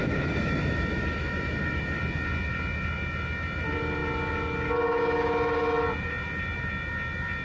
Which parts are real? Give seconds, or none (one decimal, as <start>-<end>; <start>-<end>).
1.8-7.4